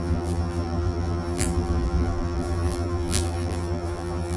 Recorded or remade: remade